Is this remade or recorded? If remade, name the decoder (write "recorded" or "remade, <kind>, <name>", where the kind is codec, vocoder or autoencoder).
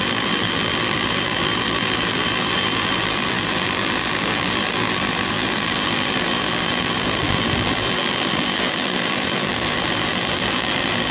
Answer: remade, vocoder, BigVGAN v2